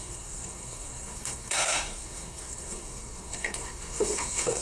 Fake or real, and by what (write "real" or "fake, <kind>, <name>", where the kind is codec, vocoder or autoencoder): fake, codec, SNAC